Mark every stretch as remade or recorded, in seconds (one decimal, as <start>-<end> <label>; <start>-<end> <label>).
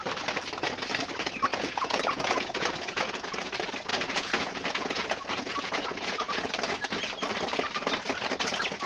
0.0-1.5 recorded; 1.5-3.5 remade; 3.5-3.9 recorded; 3.9-6.5 remade; 6.5-8.9 recorded